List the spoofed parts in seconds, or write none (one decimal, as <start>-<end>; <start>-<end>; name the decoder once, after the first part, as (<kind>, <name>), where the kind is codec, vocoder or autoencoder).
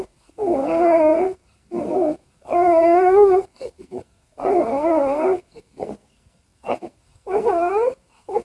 0.0-8.4 (codec, SNAC)